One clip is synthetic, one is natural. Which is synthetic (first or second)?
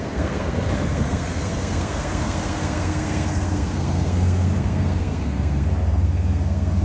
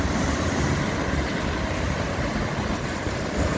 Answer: first